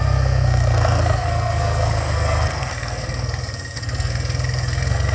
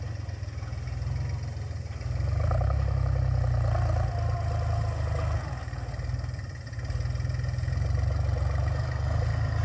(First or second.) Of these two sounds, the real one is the second